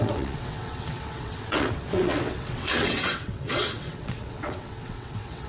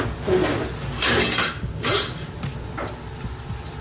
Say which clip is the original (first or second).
second